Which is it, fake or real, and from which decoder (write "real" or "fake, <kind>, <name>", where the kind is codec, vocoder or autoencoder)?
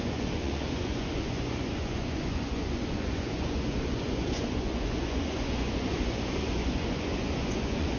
fake, vocoder, Vocos